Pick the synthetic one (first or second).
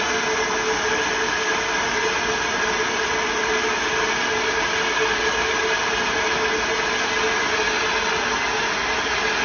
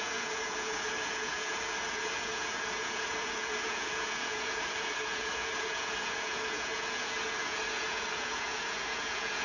second